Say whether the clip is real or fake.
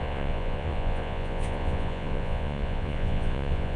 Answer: fake